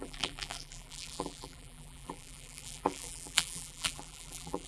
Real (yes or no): no